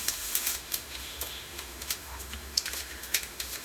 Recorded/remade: remade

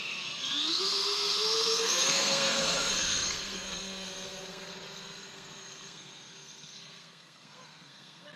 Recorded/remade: remade